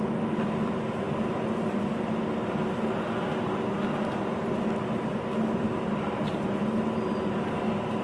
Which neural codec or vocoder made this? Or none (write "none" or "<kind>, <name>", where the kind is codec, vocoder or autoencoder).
none